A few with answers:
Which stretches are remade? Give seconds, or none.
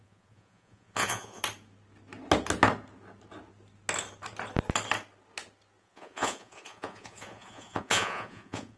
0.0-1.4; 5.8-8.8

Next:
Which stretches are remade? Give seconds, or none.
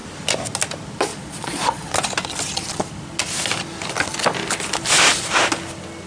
1.1-1.9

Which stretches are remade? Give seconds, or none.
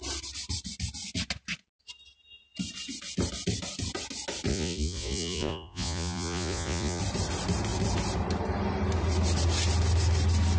4.5-7.0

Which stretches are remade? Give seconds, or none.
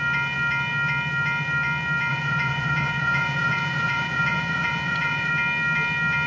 2.1-5.3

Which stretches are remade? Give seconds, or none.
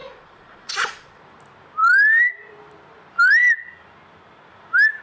0.0-1.2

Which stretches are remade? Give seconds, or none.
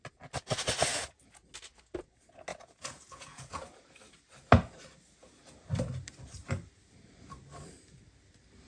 0.9-1.4; 2.5-3.8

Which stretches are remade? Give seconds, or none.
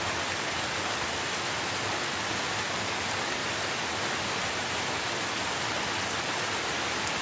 none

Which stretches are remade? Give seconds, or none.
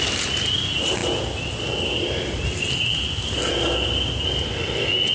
none